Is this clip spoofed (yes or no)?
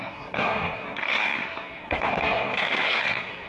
yes